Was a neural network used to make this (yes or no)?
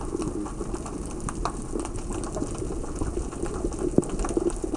no